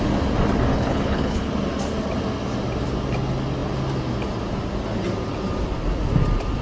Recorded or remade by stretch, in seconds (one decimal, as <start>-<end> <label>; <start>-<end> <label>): 0.0-0.7 recorded; 0.7-1.5 remade; 1.5-6.6 recorded